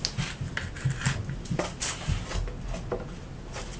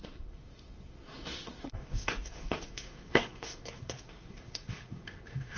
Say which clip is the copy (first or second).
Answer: second